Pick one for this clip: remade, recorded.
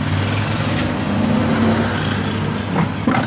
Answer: recorded